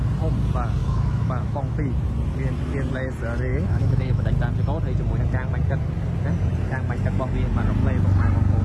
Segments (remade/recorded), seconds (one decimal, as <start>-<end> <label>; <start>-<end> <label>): 0.0-0.8 recorded; 0.8-1.7 remade; 1.7-3.5 recorded; 3.5-4.3 remade; 4.3-8.6 recorded